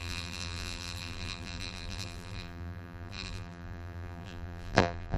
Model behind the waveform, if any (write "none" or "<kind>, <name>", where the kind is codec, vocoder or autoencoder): vocoder, BigVGAN v2